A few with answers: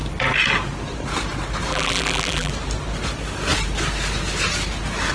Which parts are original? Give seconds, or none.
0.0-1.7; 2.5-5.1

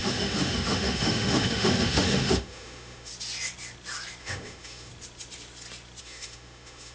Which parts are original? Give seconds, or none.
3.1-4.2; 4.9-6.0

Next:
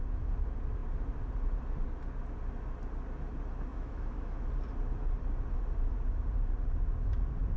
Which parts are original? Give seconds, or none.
0.0-3.7; 4.5-7.6

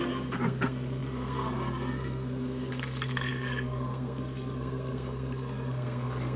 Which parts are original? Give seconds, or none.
none